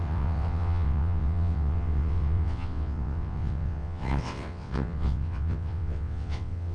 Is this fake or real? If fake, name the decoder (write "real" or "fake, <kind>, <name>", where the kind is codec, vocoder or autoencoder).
fake, vocoder, WaveNeXt